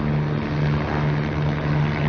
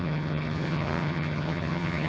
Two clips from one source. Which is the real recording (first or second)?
first